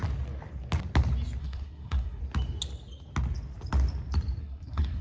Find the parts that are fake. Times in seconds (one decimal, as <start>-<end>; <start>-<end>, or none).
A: 1.4-2.2; 4.4-5.0